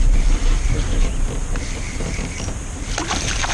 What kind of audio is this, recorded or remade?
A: remade